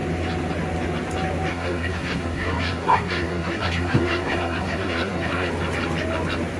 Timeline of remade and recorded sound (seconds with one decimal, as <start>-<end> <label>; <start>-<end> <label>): 0.0-1.5 recorded; 1.5-5.5 remade; 5.5-6.6 recorded